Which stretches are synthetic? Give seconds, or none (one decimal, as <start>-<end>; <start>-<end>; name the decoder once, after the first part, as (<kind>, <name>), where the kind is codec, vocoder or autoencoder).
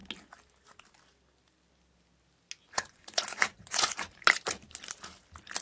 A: 2.6-4.2 (vocoder, Vocos)